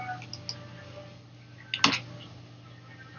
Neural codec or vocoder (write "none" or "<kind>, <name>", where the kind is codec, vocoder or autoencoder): none